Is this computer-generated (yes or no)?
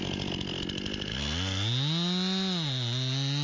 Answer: no